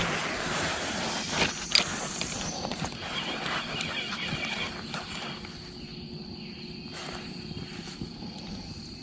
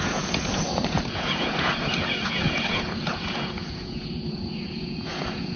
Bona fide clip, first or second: first